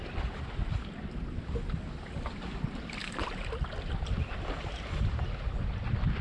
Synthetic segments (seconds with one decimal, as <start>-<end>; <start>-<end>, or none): none